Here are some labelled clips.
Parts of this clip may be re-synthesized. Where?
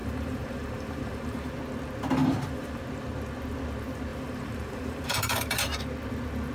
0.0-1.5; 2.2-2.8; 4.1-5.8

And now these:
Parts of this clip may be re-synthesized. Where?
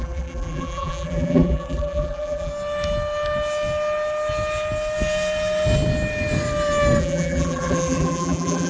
0.0-2.5; 7.0-8.7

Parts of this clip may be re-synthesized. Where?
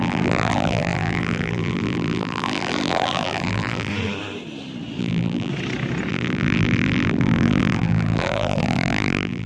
0.0-3.9; 5.0-5.5; 6.1-9.5